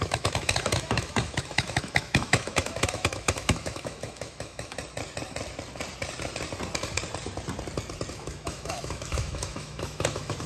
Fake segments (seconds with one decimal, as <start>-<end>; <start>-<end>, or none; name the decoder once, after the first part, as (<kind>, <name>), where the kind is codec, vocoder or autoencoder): 0.0-4.8 (autoencoder, DAC-VAE); 8.1-10.5